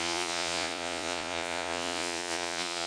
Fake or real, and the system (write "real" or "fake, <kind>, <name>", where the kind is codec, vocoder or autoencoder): fake, vocoder, Vocos